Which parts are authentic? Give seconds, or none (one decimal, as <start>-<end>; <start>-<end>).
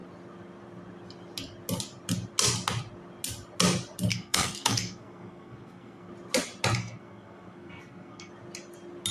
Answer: 0.0-4.1; 6.1-6.8; 8.3-9.1